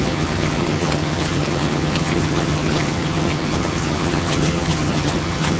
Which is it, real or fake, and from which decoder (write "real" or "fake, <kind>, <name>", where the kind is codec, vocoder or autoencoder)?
fake, vocoder, HiFi-GAN